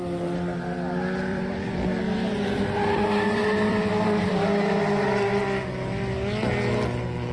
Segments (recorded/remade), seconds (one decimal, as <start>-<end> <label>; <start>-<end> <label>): 0.0-1.3 recorded; 1.3-2.0 remade; 2.0-3.7 recorded; 3.7-4.4 remade; 4.4-7.3 recorded

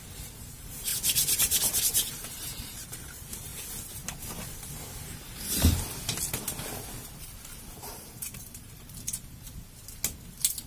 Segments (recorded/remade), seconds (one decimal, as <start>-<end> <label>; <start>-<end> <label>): 0.0-0.9 remade; 0.9-1.8 recorded; 1.8-3.5 remade; 3.5-7.6 recorded; 7.6-9.8 remade; 9.8-10.7 recorded

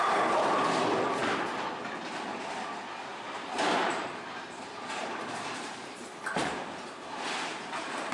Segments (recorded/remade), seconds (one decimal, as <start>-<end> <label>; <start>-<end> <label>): 0.0-3.1 recorded; 3.1-4.6 remade; 4.6-5.0 recorded; 5.0-8.1 remade

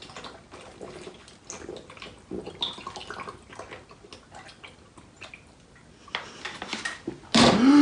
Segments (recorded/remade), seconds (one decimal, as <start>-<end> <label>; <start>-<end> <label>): 0.0-7.8 recorded

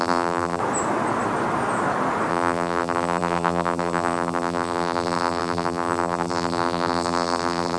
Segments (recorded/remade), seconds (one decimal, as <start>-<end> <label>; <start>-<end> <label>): 0.0-0.6 remade; 0.6-2.3 recorded; 2.3-7.8 remade

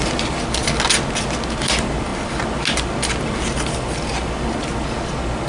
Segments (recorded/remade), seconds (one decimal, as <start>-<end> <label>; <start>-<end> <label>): 0.0-5.5 recorded

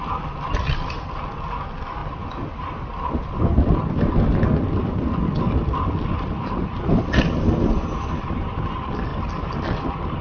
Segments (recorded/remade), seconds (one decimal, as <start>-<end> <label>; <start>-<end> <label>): 0.0-2.0 recorded; 2.0-7.2 remade; 7.2-9.1 recorded; 9.1-10.2 remade

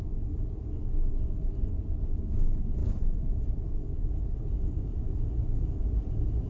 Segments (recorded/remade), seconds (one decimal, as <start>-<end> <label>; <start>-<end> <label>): 0.0-2.8 recorded; 2.8-5.8 remade; 5.8-6.5 recorded